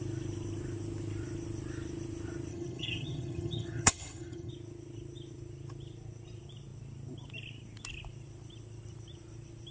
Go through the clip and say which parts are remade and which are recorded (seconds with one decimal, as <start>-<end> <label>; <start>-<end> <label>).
0.0-2.5 recorded; 2.5-4.5 remade; 4.5-9.7 recorded